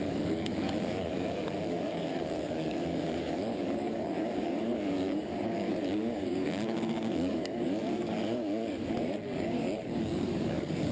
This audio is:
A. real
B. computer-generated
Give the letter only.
B